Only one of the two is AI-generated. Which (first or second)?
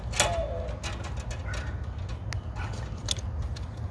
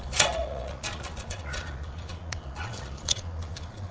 second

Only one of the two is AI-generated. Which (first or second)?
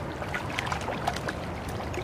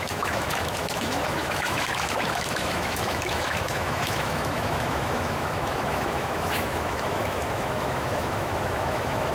second